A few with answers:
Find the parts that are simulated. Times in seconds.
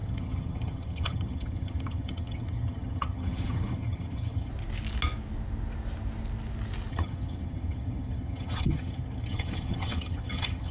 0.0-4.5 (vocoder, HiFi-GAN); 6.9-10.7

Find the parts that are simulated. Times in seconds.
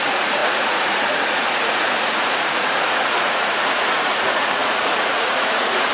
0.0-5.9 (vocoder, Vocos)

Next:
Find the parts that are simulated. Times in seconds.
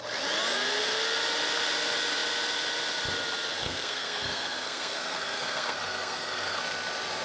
3.6-6.6 (codec, SNAC)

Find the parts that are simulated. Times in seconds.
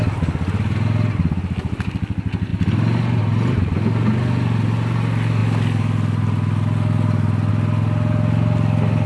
none